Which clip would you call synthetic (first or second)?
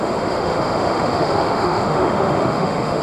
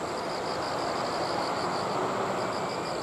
first